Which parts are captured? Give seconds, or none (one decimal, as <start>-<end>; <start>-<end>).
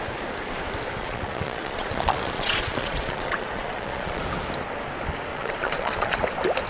0.0-1.0; 4.2-5.3; 6.2-6.7